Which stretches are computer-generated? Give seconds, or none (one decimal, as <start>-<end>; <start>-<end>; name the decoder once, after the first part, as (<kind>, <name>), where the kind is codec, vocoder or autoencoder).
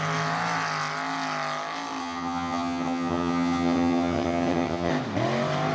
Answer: 2.0-4.9 (vocoder, HiFi-GAN)